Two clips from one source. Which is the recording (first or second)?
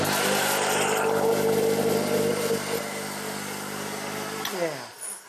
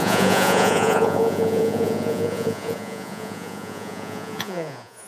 first